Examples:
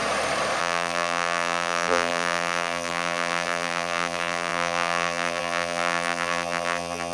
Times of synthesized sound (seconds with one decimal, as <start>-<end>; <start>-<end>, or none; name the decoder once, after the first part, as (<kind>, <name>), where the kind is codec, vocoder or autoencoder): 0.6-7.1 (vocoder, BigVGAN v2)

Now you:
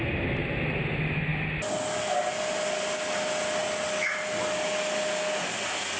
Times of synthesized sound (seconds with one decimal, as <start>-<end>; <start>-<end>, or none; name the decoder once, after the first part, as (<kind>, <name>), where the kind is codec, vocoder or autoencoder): none

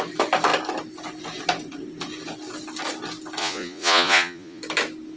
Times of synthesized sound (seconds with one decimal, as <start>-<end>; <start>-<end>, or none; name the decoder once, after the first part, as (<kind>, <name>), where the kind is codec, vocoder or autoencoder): 3.4-4.6 (vocoder, Vocos)